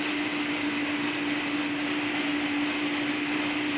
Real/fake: real